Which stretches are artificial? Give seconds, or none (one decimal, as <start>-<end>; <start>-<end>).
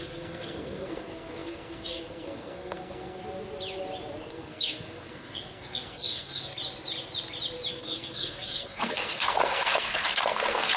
0.0-3.2; 4.3-6.5; 7.7-10.8